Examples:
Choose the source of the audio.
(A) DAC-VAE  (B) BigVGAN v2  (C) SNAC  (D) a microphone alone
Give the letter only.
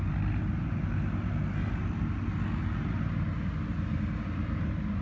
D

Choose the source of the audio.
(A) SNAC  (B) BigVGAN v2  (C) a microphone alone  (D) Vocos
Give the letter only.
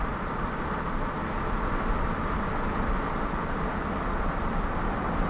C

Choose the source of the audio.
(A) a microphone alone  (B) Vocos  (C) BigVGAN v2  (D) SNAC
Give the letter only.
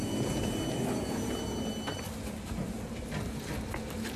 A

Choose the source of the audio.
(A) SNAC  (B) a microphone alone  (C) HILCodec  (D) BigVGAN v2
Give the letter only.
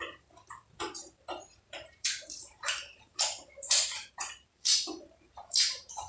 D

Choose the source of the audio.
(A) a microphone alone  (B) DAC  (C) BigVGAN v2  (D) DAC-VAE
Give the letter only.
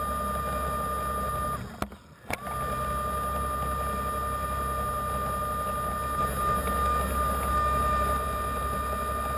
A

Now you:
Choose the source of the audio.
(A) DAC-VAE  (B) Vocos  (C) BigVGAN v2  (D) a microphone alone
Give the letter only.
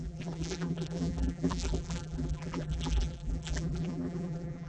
C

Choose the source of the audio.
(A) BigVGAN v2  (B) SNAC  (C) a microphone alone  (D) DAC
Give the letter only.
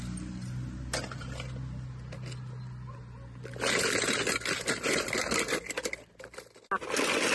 C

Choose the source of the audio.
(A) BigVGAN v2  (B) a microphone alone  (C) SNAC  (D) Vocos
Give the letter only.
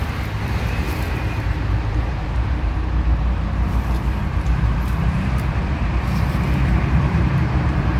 A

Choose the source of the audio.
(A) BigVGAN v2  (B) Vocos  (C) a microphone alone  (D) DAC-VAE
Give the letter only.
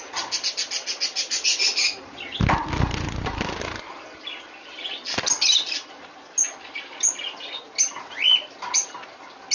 C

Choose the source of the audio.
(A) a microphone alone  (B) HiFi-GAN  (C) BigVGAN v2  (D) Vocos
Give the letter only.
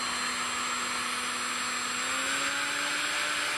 A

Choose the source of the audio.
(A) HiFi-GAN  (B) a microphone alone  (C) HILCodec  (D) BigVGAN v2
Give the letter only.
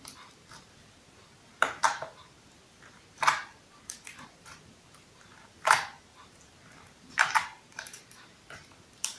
D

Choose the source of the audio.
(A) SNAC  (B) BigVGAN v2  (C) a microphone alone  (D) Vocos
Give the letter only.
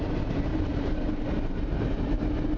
C